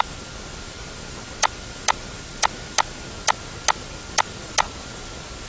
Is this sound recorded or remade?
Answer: recorded